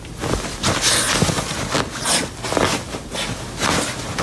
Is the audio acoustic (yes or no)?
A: yes